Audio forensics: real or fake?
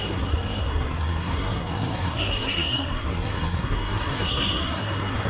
fake